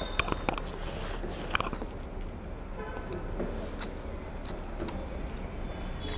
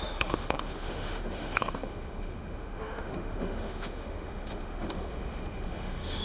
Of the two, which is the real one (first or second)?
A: first